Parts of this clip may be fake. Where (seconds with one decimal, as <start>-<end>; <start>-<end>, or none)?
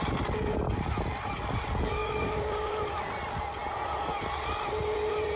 2.0-2.7